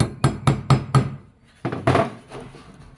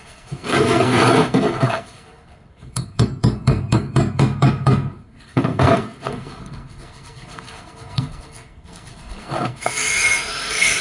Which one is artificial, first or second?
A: second